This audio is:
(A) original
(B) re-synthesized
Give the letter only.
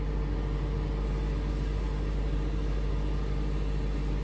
A